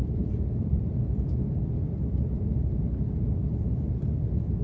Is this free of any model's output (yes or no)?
no